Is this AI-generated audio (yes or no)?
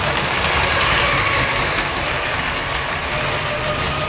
no